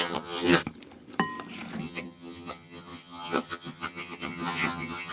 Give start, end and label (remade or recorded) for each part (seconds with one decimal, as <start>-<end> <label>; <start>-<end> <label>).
0.0-0.6 remade; 0.6-1.8 recorded; 1.8-5.1 remade